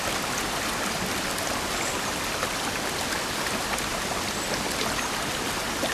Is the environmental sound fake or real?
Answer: real